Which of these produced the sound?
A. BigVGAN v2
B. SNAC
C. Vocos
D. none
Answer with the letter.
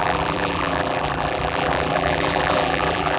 A